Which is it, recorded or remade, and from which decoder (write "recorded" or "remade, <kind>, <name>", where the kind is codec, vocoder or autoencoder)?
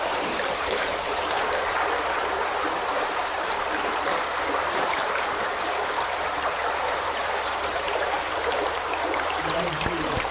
remade, vocoder, BigVGAN v2